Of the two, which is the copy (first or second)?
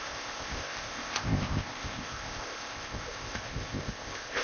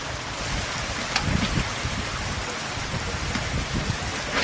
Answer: first